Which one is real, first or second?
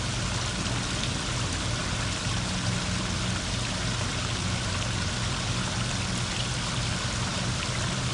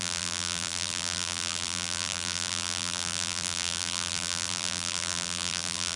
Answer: first